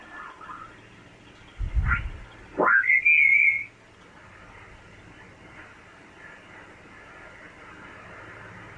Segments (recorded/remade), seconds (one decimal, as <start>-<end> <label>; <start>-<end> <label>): 0.0-8.8 recorded